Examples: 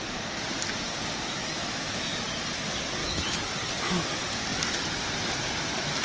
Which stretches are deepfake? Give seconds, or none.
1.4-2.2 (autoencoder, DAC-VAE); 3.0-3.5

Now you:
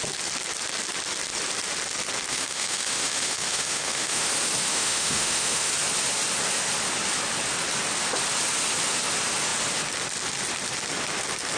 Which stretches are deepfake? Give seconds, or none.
2.3-4.3 (autoencoder, DAC-VAE); 4.7-5.7